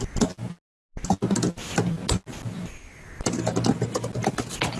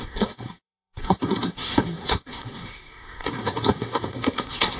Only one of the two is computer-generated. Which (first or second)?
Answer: second